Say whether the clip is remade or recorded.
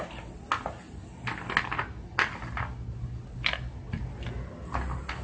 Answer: recorded